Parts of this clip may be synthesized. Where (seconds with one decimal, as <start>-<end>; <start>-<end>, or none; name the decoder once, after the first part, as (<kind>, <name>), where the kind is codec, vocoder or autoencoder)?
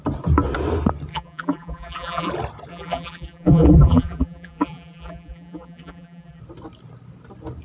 1.1-2.3 (vocoder, BigVGAN v2); 2.7-6.4